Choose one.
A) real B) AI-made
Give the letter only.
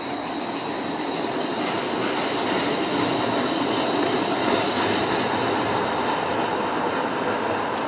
A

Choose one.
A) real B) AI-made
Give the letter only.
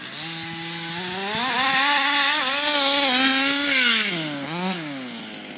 A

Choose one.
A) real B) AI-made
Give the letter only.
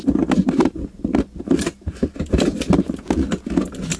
A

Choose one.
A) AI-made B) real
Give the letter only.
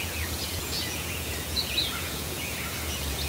A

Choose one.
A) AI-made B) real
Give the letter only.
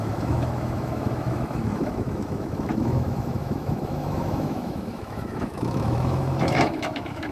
A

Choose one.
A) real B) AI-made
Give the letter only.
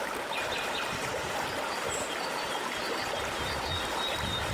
A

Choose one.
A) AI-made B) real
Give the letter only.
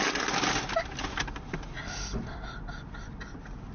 B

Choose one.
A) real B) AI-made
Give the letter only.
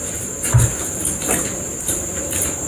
B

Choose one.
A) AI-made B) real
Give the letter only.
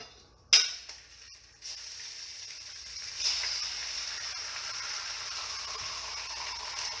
B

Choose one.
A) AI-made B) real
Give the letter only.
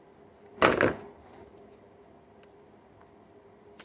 B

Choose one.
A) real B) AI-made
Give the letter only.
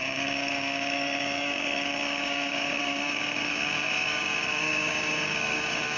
B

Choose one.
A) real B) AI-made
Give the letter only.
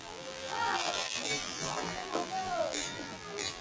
B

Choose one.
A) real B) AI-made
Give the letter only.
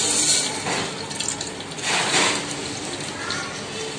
A